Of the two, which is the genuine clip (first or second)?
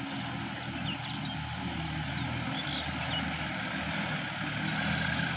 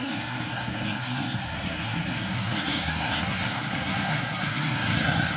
first